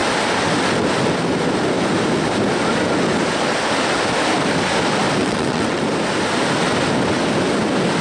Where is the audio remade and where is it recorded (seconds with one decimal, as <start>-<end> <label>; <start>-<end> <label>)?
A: 0.0-5.2 recorded; 5.2-5.8 remade; 5.8-8.0 recorded